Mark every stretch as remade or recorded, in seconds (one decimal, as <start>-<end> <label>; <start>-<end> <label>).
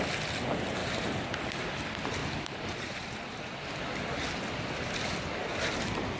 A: 0.0-0.8 recorded; 0.8-1.3 remade; 1.3-2.2 recorded; 2.2-3.4 remade; 3.4-6.2 recorded